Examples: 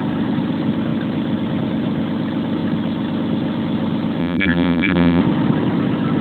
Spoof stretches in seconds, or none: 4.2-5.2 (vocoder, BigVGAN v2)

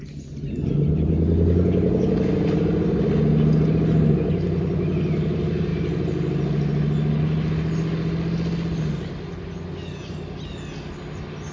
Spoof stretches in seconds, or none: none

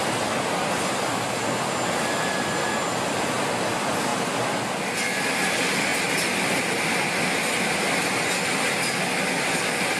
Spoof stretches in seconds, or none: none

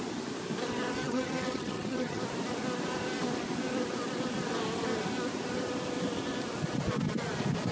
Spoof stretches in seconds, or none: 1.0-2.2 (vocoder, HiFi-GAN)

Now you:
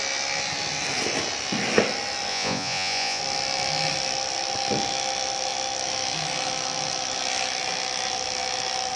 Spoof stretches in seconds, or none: 2.3-3.2 (vocoder, Vocos)

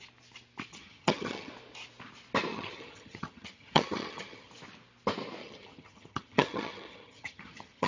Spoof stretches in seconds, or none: 0.7-1.5 (vocoder, HiFi-GAN); 2.5-4.5; 5.4-7.9